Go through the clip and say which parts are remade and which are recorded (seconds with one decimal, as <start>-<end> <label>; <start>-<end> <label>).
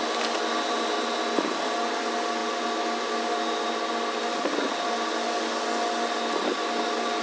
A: 0.0-7.2 recorded